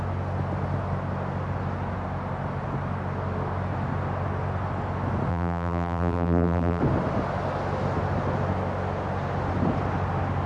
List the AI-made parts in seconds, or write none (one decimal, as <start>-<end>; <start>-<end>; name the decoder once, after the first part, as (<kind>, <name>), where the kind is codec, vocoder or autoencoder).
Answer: 5.3-6.8 (vocoder, BigVGAN v2)